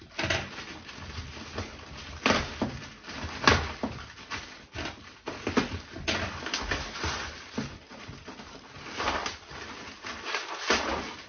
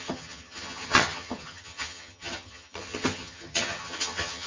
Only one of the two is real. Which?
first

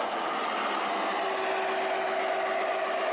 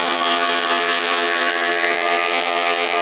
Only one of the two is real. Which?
first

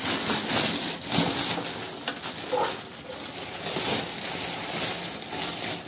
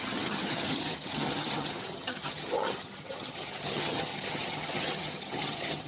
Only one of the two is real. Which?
first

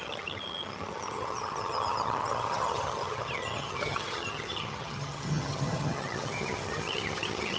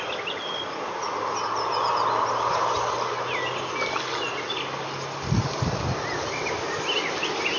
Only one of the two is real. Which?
second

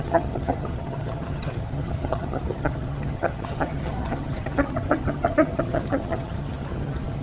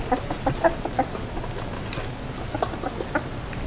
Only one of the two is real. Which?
second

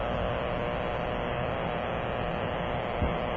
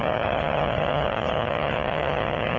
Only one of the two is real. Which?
first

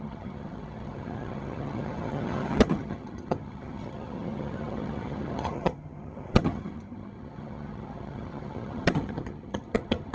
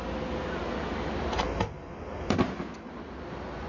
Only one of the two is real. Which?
second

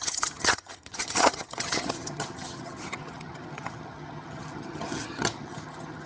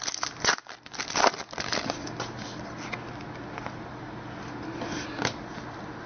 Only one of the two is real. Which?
second